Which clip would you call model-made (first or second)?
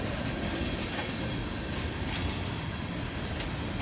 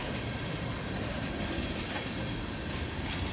second